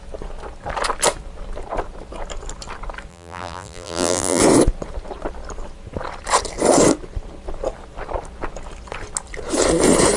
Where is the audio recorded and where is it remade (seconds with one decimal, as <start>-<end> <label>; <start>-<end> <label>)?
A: 0.0-3.1 recorded; 3.1-4.4 remade; 4.4-10.2 recorded

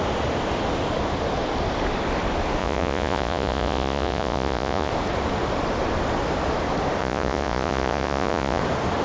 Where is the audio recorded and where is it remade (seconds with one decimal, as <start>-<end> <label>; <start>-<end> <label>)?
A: 0.0-2.6 recorded; 2.6-4.9 remade; 4.9-7.0 recorded; 7.0-8.6 remade; 8.6-9.0 recorded

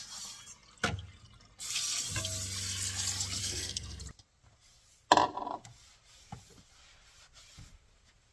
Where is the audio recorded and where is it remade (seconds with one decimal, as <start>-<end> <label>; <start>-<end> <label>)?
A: 0.0-3.4 recorded; 3.4-4.0 remade; 4.0-8.3 recorded

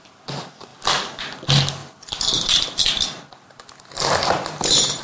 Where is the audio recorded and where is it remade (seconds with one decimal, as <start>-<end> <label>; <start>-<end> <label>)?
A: 0.0-5.0 recorded